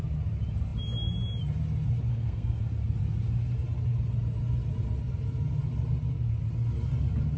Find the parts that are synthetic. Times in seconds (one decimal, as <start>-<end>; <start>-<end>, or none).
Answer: 2.1-2.6